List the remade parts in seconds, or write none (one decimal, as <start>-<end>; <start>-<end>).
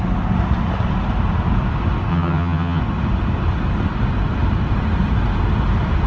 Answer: 2.1-2.8